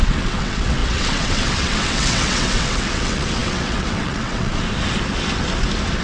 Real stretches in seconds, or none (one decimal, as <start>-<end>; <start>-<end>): 4.5-6.0